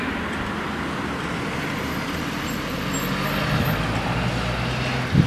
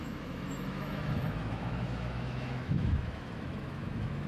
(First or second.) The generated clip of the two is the second